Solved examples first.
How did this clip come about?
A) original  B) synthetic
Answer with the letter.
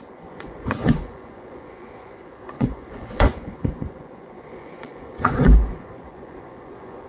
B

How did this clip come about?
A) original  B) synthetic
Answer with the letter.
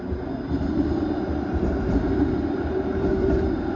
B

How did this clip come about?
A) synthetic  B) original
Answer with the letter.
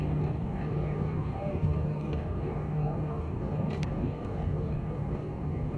A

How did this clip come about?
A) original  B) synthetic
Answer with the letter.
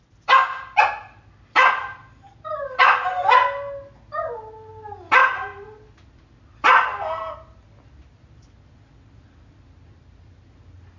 A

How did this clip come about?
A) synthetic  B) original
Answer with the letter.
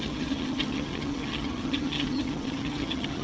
A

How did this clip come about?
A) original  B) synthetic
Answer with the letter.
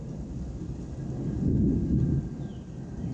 A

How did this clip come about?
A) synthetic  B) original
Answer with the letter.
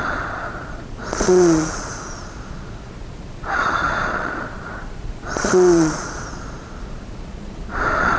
A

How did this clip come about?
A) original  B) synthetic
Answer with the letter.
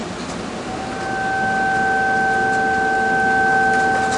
A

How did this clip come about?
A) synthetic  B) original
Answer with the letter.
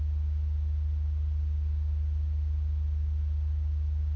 B